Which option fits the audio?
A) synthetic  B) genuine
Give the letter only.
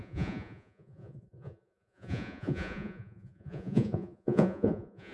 A